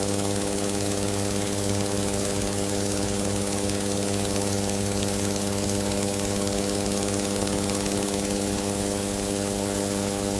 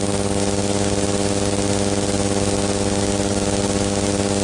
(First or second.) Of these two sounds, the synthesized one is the first